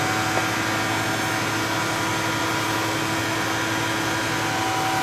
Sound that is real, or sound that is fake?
real